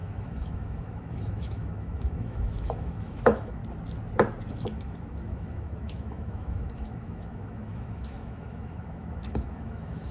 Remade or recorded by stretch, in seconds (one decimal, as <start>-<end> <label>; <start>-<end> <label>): 0.0-3.6 remade; 3.6-4.5 recorded; 4.5-10.1 remade

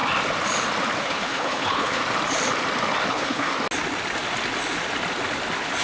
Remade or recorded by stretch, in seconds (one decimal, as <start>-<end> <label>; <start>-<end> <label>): 0.0-1.0 recorded; 1.0-2.0 remade; 2.0-3.1 recorded; 3.1-3.5 remade; 3.5-5.8 recorded

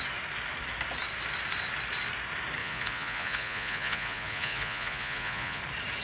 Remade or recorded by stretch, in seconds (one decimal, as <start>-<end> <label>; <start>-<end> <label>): 0.0-2.6 recorded; 2.6-5.6 remade; 5.6-6.0 recorded

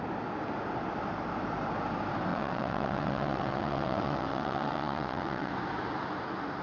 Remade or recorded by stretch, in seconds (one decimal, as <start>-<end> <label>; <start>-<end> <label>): 0.0-2.3 recorded; 2.3-5.5 remade; 5.5-6.6 recorded

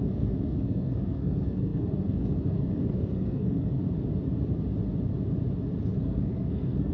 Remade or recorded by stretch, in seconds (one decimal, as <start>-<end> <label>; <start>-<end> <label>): 0.0-3.8 remade; 3.8-6.0 recorded; 6.0-6.9 remade

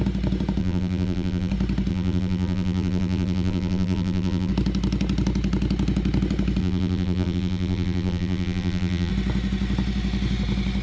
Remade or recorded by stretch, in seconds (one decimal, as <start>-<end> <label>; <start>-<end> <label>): 0.0-0.6 recorded; 0.6-1.5 remade; 1.5-1.9 recorded; 1.9-4.5 remade; 4.5-6.6 recorded; 6.6-9.1 remade; 9.1-10.8 recorded